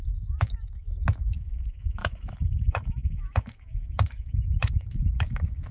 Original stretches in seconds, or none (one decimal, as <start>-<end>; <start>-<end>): none